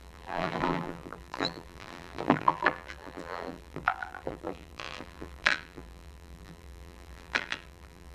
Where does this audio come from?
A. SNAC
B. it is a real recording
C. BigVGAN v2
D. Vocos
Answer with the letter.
C